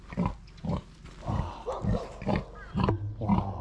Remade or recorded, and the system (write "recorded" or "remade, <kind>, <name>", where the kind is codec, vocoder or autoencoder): recorded